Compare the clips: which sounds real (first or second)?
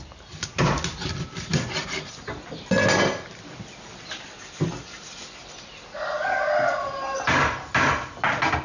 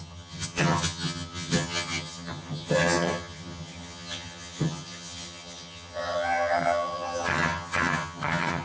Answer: first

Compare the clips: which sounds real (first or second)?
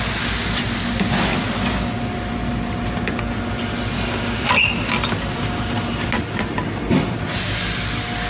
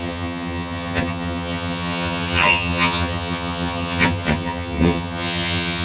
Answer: first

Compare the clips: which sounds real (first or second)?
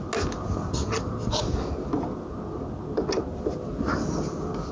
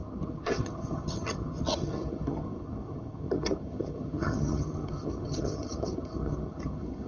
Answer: first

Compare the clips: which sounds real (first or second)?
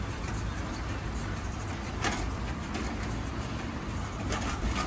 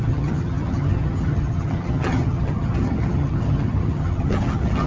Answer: first